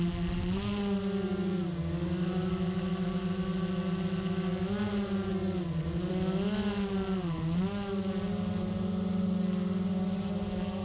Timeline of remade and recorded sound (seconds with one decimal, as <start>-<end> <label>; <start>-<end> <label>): 0.0-10.8 recorded